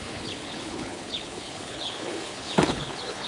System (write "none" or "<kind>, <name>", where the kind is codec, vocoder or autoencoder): codec, HILCodec